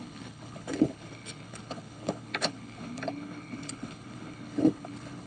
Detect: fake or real fake